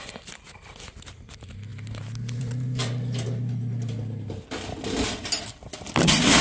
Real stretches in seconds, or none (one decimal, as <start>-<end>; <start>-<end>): 0.0-6.4